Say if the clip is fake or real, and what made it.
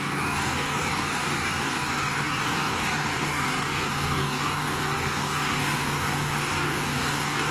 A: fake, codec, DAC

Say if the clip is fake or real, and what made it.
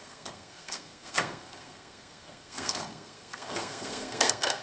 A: fake, codec, SNAC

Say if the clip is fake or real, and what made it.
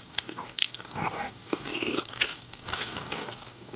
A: fake, codec, DAC